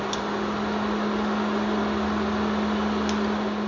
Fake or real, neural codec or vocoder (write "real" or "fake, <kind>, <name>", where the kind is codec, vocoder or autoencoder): real